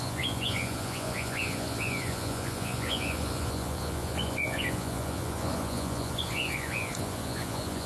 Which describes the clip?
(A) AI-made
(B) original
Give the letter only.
A